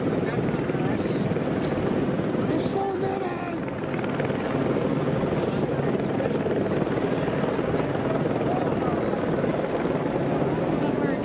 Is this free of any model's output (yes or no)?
yes